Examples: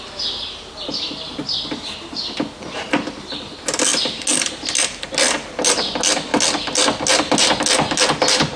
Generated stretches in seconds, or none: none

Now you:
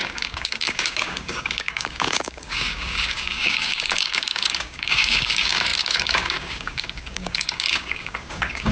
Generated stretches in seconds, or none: 0.0-8.7 (codec, DAC)

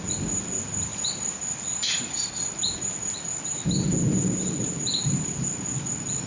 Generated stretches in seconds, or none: none

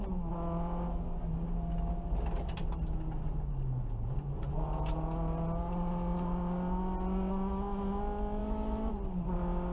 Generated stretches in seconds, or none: 8.4-8.9 (autoencoder, DAC-VAE)

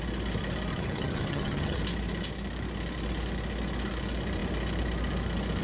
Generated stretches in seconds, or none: 0.7-1.8 (vocoder, HiFi-GAN)

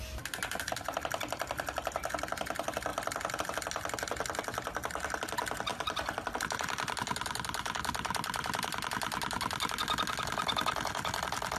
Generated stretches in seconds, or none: none